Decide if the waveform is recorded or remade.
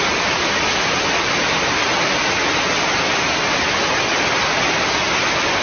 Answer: recorded